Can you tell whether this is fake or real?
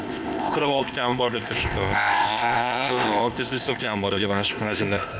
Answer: fake